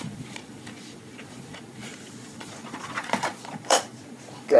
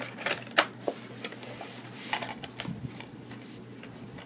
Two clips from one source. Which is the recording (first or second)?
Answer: second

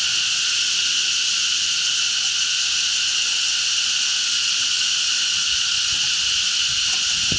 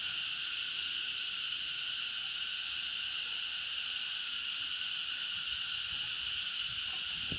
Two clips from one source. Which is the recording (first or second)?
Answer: first